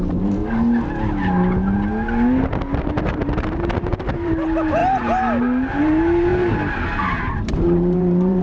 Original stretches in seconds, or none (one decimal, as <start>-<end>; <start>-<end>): 0.4-3.0; 4.8-5.8; 6.3-7.0